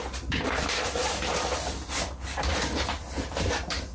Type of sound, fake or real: fake